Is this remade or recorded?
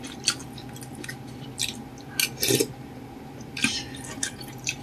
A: recorded